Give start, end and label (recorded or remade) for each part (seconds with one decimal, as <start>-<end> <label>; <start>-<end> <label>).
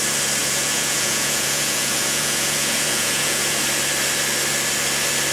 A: 0.0-0.4 recorded; 0.4-3.6 remade; 3.6-5.3 recorded